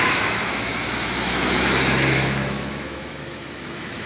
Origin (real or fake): fake